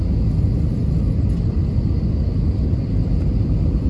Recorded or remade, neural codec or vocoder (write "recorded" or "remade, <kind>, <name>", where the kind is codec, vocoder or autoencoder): recorded